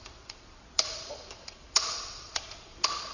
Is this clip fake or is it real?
fake